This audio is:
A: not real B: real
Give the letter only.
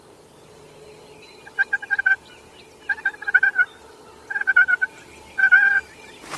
B